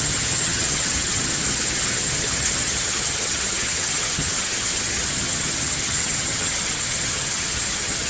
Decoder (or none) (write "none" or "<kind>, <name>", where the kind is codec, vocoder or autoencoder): vocoder, HiFi-GAN